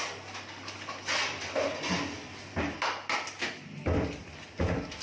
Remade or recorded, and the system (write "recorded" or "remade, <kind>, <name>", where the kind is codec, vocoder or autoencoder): recorded